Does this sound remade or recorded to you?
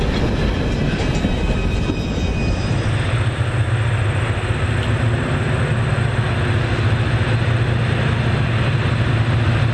recorded